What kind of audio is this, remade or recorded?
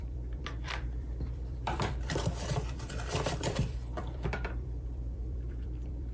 remade